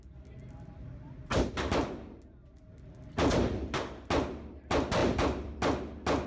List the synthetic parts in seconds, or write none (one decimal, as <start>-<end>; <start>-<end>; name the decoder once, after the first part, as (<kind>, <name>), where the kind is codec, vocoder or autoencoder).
none